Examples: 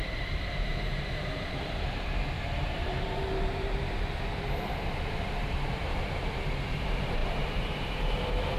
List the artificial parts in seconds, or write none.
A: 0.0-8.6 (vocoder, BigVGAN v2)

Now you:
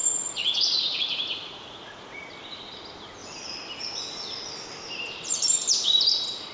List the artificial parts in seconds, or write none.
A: 0.0-2.3 (vocoder, Vocos)

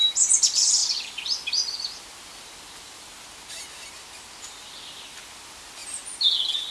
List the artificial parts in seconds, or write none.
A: none

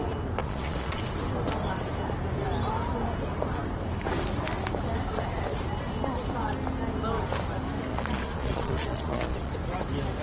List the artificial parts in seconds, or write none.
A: 0.4-1.0 (vocoder, Vocos); 7.9-9.5

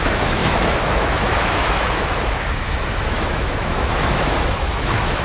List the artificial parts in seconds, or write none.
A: 0.0-5.2 (autoencoder, DAC-VAE)

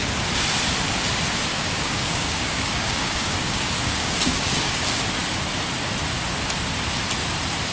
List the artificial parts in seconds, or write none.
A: 1.5-4.8 (codec, DAC)